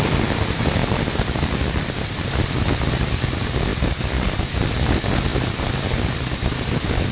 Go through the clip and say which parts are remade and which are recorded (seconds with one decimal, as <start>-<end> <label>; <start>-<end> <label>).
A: 0.0-0.8 recorded; 0.8-2.9 remade; 2.9-3.7 recorded; 3.7-4.5 remade; 4.5-7.1 recorded